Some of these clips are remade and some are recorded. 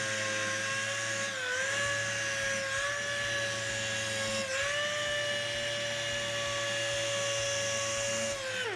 recorded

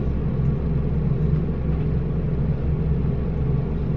recorded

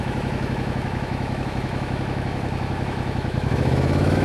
remade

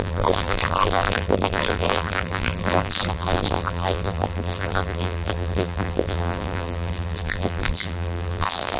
remade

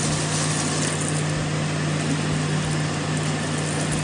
recorded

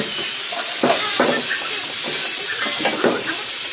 recorded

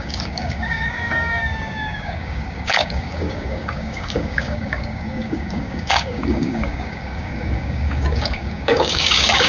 remade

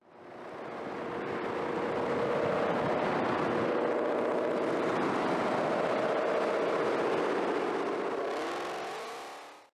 recorded